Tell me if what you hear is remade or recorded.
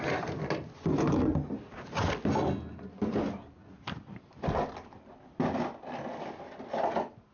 recorded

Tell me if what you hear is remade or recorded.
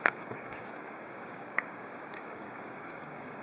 remade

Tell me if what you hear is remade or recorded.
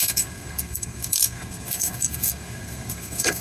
remade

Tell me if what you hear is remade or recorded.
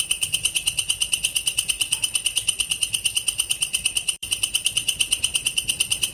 remade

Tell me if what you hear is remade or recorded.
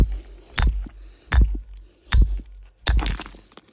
recorded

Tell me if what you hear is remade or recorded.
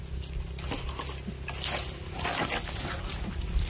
recorded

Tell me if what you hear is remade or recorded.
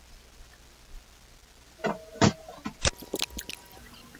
recorded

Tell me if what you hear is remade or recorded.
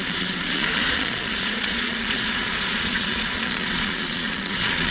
remade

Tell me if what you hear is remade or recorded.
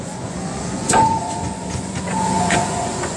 remade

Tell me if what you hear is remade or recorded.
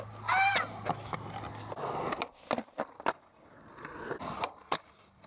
recorded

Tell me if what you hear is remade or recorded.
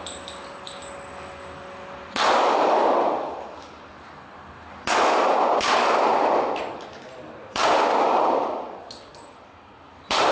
recorded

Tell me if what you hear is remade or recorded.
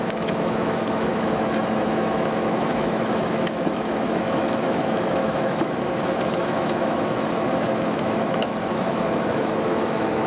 remade